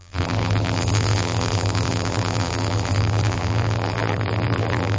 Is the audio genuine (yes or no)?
no